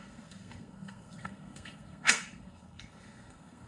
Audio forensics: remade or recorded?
remade